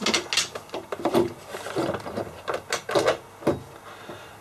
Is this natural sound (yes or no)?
yes